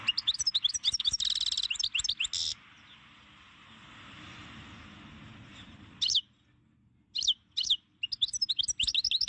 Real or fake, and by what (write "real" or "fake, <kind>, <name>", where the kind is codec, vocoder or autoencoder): real